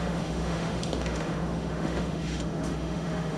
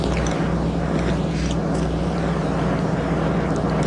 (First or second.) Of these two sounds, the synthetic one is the first